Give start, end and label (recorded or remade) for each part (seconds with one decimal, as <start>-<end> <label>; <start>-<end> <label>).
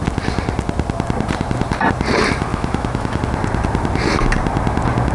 0.0-2.5 recorded; 2.5-3.2 remade; 3.2-5.1 recorded